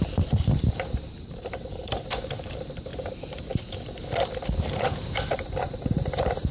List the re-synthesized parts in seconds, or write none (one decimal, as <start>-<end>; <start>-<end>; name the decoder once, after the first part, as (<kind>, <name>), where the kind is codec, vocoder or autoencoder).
0.0-2.9 (vocoder, BigVGAN v2); 4.6-6.5